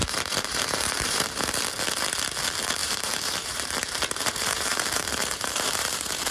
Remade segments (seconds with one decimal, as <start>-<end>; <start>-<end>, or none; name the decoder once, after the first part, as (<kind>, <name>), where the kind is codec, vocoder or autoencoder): 0.0-1.5 (vocoder, BigVGAN v2); 2.8-6.3